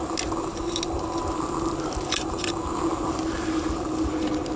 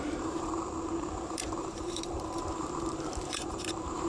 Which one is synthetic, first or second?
second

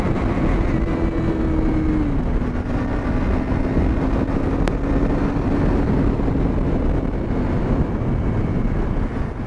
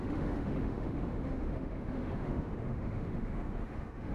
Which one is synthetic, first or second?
second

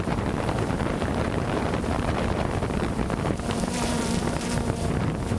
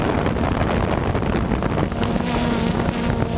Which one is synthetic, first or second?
first